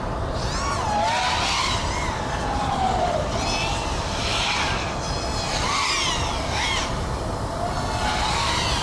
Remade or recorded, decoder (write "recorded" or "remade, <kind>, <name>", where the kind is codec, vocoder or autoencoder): recorded